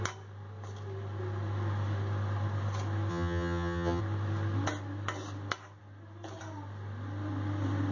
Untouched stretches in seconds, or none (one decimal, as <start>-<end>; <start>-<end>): 0.0-3.1; 4.0-7.9